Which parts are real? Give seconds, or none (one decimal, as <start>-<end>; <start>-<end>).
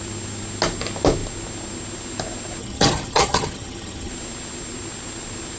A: 0.0-2.6; 4.1-5.6